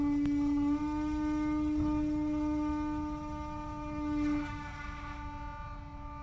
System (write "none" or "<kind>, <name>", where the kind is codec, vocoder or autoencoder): none